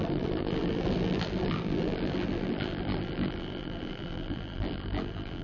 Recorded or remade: remade